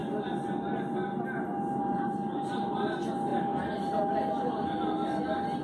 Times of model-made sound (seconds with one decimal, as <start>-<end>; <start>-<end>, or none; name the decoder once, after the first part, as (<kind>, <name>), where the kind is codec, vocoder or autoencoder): none